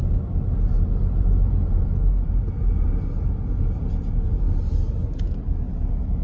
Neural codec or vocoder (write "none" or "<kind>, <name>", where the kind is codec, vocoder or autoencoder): none